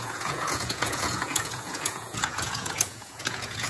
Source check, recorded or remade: remade